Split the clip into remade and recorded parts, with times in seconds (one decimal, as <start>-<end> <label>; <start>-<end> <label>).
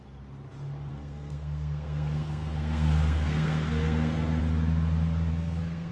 0.0-0.9 recorded; 0.9-4.4 remade; 4.4-5.3 recorded; 5.3-5.9 remade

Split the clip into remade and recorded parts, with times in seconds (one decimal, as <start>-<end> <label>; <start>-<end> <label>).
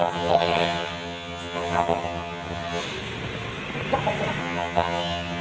0.0-2.8 remade; 2.8-4.4 recorded; 4.4-5.4 remade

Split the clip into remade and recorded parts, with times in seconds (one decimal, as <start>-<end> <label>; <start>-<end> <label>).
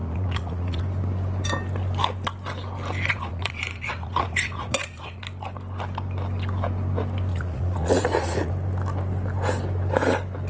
0.0-0.8 remade; 0.8-3.1 recorded; 3.1-5.2 remade; 5.2-7.3 recorded; 7.3-8.5 remade; 8.5-10.5 recorded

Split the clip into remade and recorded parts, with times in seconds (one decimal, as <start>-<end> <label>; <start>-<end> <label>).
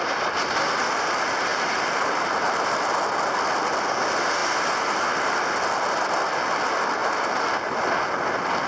0.0-1.5 recorded; 1.5-2.6 remade; 2.6-4.4 recorded; 4.4-5.1 remade; 5.1-7.0 recorded; 7.0-7.5 remade; 7.5-8.7 recorded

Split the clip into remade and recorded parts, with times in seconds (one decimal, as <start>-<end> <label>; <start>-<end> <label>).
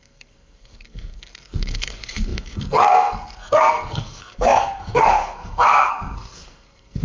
0.0-7.0 remade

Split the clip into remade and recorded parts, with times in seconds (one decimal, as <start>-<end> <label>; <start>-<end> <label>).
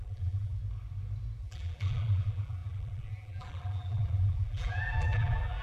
0.0-0.6 remade; 0.6-1.4 recorded; 1.4-5.6 remade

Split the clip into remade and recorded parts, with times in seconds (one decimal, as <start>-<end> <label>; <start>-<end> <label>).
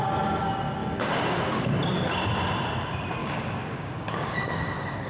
0.0-0.8 recorded; 0.8-1.6 remade; 1.6-3.2 recorded; 3.2-5.1 remade